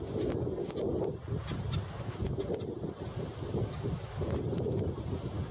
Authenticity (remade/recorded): recorded